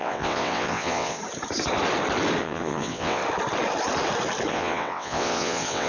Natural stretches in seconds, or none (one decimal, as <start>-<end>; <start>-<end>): 1.2-2.4; 3.2-4.5